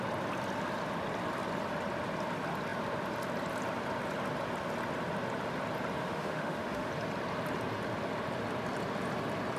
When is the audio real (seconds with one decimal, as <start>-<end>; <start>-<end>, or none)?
0.0-6.0; 6.9-9.6

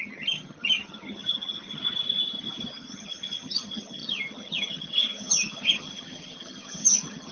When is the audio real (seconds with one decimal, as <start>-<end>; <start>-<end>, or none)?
1.8-2.7

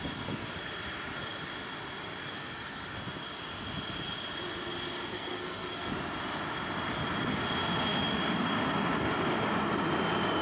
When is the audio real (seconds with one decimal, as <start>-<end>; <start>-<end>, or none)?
0.0-2.2; 2.8-5.1; 5.9-10.4